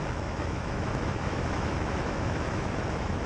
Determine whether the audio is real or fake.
fake